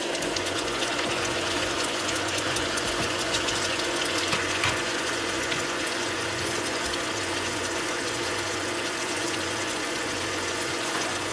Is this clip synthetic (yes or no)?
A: yes